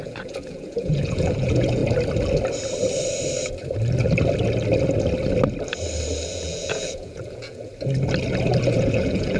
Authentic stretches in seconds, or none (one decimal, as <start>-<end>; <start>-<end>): 1.8-6.3; 7.7-8.6